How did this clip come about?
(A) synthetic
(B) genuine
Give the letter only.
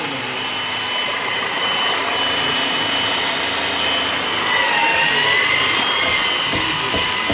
B